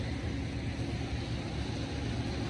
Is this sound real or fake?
real